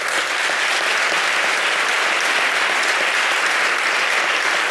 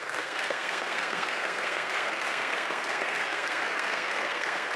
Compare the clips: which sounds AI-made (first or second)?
second